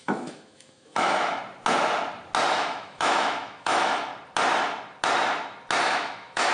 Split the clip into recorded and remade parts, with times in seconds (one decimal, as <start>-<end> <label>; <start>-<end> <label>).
0.0-1.4 remade; 1.4-2.5 recorded; 2.5-4.1 remade; 4.1-5.8 recorded; 5.8-6.5 remade